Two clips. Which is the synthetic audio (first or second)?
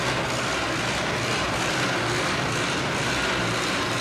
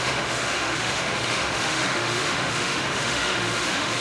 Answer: second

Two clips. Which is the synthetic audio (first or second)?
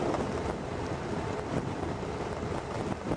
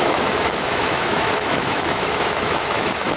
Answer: second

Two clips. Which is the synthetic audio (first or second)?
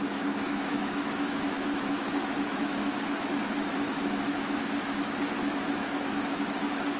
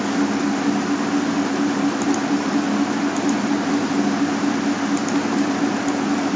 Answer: first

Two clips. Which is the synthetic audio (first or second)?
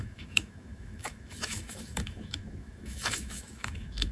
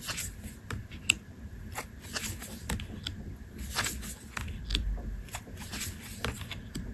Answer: first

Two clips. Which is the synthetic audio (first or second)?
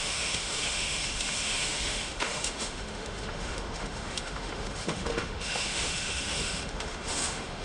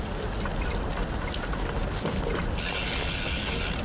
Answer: first